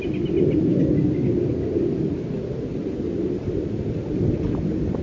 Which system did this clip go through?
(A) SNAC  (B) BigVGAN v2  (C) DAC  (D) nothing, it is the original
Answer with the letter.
D